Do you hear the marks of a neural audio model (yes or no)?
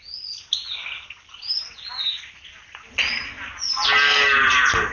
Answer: no